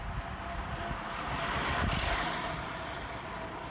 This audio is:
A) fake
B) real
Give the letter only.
B